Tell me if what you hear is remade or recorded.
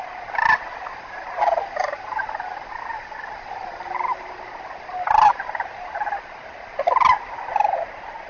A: recorded